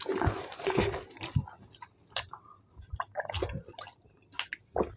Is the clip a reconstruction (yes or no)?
no